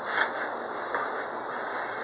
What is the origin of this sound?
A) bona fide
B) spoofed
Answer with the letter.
A